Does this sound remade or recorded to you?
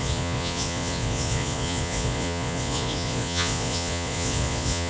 remade